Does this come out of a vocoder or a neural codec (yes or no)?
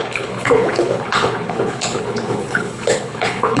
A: yes